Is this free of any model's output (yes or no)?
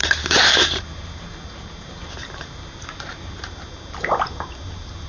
no